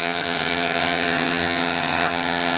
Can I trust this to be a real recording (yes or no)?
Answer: no